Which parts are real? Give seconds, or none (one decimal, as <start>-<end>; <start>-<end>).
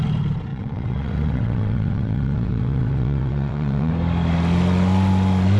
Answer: 0.0-0.5; 3.9-5.6